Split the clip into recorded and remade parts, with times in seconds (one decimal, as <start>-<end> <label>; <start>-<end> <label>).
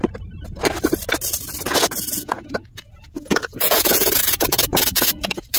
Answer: 0.0-2.1 recorded; 2.1-5.6 remade